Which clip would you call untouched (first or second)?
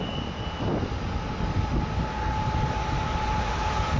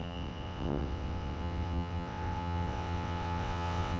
first